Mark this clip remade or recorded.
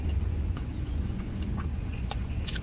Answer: remade